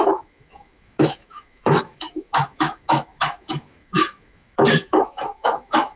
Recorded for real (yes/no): no